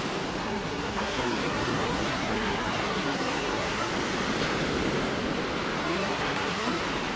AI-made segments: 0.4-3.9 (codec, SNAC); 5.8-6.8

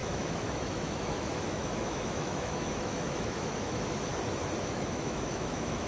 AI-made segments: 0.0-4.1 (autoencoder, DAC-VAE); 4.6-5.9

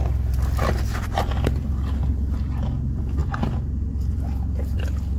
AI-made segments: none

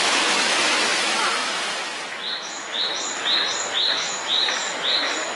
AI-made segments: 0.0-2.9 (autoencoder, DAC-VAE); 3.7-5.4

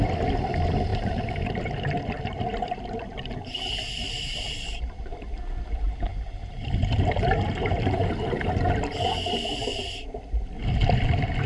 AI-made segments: 0.9-2.8 (vocoder, BigVGAN v2); 4.0-5.3; 6.1-8.1

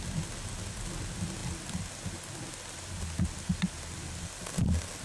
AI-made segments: none

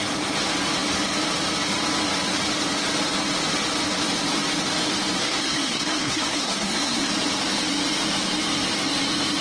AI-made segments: 5.2-7.1 (codec, SNAC)